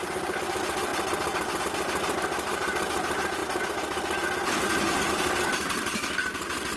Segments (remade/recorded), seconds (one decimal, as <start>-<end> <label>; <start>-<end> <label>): 0.0-0.9 remade; 0.9-1.6 recorded; 1.6-3.4 remade; 3.4-5.0 recorded; 5.0-6.8 remade